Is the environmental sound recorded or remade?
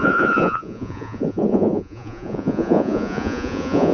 remade